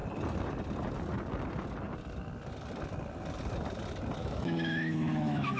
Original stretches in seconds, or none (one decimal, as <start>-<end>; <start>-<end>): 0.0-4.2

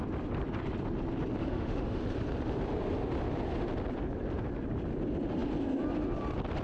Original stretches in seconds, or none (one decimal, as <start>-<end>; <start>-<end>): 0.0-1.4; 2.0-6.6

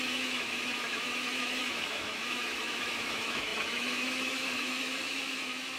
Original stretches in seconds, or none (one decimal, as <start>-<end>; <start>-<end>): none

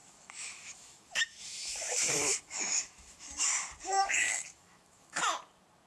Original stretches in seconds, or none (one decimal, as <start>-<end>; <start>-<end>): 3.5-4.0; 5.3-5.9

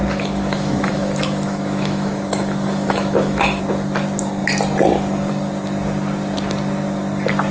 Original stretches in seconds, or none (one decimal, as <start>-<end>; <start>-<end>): 3.6-7.5